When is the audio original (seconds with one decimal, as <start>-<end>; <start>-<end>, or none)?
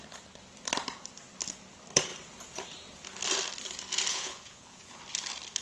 0.0-4.1; 5.0-5.6